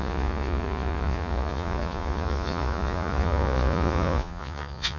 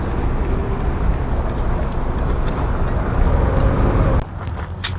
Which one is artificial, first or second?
first